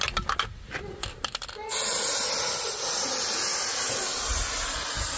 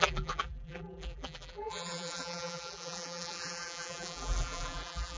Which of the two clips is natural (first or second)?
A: first